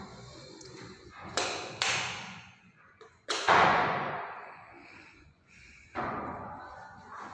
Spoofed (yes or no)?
yes